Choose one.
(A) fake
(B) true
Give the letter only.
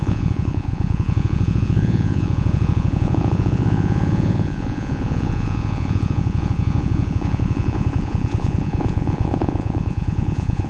A